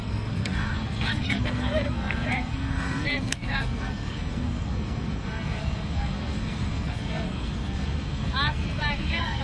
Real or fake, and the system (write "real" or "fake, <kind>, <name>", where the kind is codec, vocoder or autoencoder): fake, codec, SNAC